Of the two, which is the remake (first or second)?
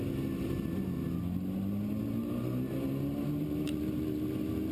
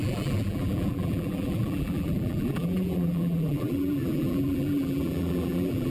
second